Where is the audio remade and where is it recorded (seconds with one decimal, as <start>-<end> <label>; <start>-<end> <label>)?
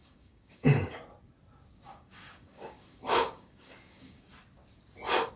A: 0.0-1.0 remade; 1.0-1.9 recorded; 1.9-4.3 remade; 4.3-5.4 recorded